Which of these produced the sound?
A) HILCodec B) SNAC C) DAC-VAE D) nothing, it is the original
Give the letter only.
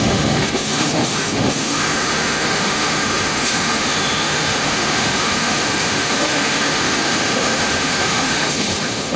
C